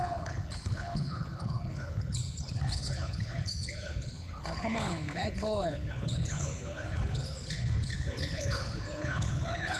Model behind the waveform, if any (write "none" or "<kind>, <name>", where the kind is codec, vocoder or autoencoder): codec, HILCodec